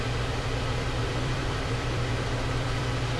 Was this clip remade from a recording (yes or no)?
yes